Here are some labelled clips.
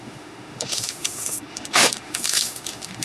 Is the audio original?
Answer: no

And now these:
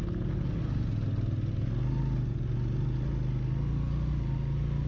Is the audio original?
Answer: yes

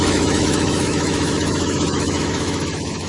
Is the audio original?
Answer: no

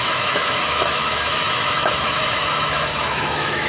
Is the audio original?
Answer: no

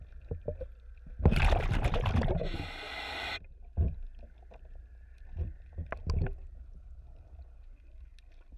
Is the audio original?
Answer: yes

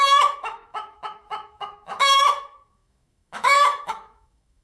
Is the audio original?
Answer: no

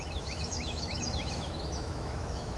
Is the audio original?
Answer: no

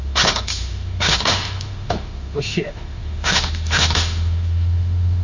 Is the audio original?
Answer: no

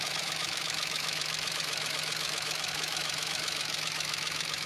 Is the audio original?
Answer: no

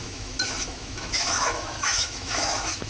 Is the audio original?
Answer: no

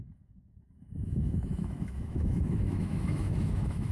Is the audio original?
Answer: no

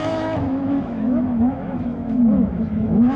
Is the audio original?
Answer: no